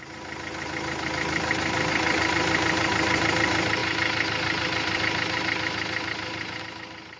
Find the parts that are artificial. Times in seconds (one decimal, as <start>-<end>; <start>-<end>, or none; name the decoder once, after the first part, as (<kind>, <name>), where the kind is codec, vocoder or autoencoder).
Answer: none